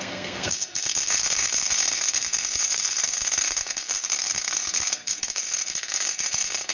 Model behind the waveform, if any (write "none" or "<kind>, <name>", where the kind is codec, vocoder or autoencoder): codec, SNAC